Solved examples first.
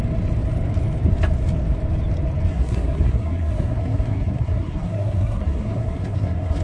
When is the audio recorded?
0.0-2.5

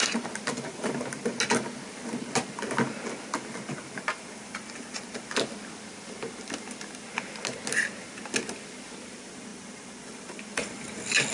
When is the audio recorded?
0.0-11.3